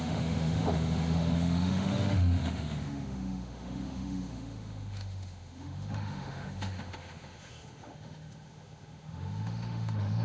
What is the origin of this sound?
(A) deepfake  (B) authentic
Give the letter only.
A